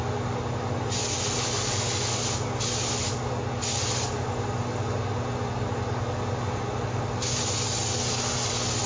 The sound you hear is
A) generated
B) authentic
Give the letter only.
B